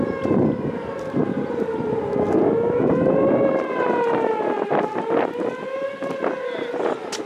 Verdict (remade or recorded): recorded